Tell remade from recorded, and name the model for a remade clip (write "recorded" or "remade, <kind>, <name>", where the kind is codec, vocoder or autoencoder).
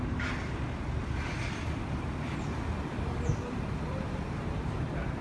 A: recorded